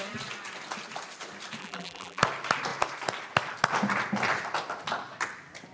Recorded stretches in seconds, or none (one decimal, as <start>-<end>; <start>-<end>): 0.0-1.6; 2.2-5.7